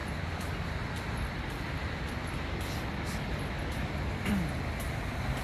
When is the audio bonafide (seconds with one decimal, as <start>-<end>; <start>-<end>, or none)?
0.0-5.4